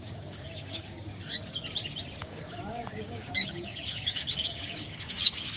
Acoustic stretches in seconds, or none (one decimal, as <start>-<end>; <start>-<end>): 1.2-2.2